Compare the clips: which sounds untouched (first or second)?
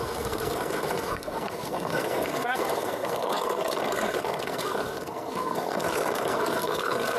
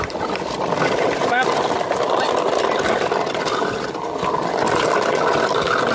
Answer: second